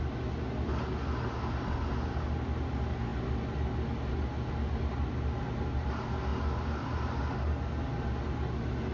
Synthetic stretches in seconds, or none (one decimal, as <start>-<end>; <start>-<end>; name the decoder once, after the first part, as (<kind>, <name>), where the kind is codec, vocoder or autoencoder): none